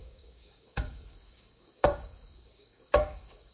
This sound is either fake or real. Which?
fake